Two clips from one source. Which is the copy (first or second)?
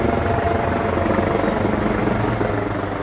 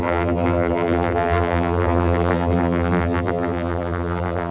second